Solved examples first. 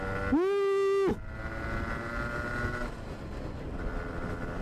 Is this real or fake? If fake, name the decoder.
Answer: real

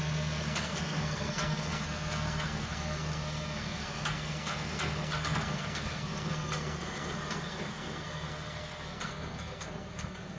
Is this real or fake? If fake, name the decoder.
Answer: fake, codec, SNAC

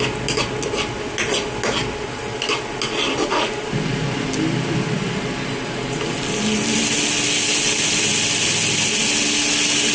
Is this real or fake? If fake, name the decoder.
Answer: real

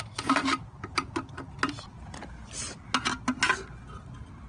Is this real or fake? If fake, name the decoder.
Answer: real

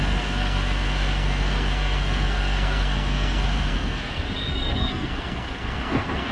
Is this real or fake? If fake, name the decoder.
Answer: fake, codec, SNAC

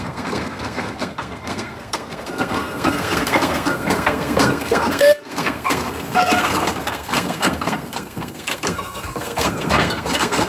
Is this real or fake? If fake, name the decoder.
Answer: fake, codec, SNAC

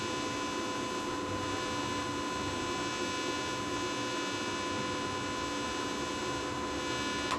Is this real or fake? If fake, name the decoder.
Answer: real